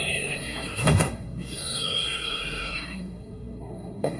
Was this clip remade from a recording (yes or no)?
yes